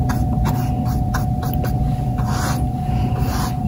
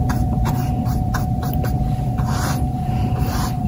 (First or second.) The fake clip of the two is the second